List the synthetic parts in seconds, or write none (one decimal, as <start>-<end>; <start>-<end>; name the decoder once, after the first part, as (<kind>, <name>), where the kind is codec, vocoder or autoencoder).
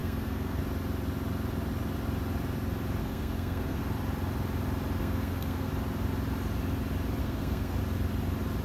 0.0-0.6 (codec, SNAC); 3.0-3.8; 5.0-5.7; 7.2-7.8